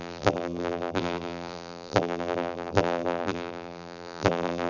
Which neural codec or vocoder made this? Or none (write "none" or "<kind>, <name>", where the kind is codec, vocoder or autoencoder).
vocoder, BigVGAN v2